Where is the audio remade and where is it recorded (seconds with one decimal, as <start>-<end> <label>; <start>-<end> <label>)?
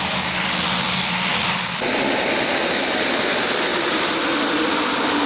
0.0-5.3 recorded